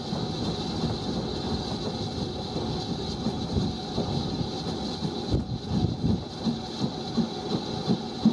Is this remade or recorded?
recorded